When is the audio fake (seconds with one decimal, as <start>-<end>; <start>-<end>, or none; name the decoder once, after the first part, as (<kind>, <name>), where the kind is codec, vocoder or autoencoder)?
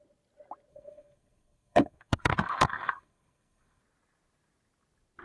0.7-3.8 (codec, SNAC)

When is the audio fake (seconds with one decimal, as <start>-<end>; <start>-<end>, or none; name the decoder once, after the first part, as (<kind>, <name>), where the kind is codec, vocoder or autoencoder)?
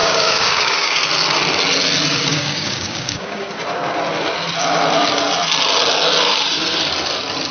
0.0-1.0 (codec, DAC); 2.3-3.5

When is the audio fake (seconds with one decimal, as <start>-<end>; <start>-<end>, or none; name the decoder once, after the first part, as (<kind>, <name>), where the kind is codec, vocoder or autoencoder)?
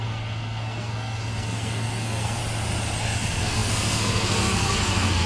0.0-2.4 (codec, SNAC); 3.0-5.3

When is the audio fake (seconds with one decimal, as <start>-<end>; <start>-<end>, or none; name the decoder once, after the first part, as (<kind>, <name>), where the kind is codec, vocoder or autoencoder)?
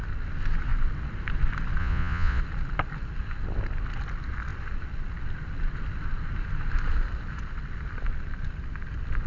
1.8-2.4 (vocoder, Vocos)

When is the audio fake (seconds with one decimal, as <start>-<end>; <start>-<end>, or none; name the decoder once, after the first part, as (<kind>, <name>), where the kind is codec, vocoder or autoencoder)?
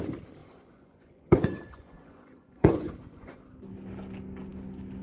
0.4-3.4 (vocoder, Vocos)